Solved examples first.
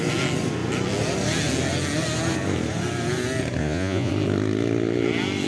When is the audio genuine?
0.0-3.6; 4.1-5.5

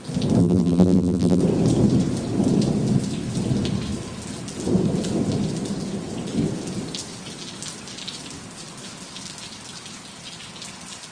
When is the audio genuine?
0.0-0.4; 1.4-11.1

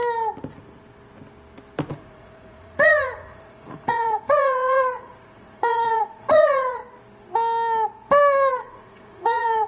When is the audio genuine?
0.0-1.9; 6.8-8.5

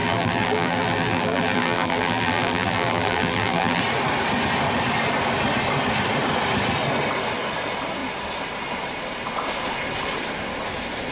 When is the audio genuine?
3.8-11.1

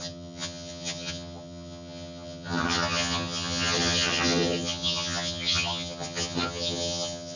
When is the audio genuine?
none

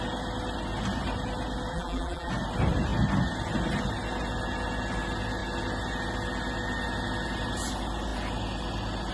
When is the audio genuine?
0.0-1.7; 2.3-9.1

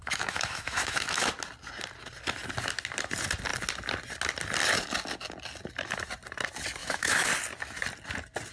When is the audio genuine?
1.3-6.8; 7.3-8.5

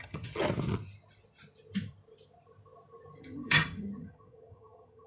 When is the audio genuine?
0.4-3.2